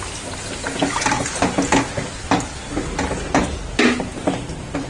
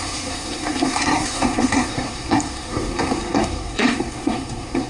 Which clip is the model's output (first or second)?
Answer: second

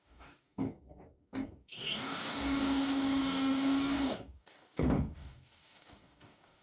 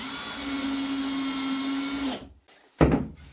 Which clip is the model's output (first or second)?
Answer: first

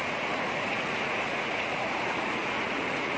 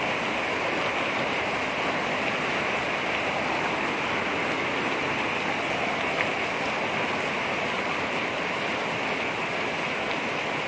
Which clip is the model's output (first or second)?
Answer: first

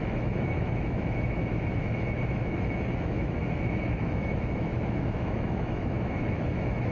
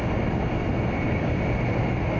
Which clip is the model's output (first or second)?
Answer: first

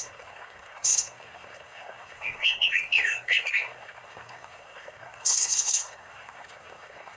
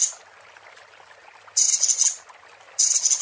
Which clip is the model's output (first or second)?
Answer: first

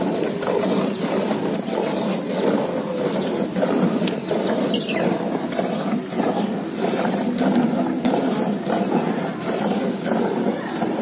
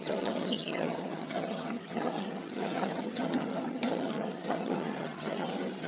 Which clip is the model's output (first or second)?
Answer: second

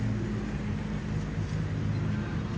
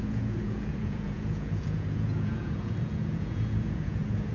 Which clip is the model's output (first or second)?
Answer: second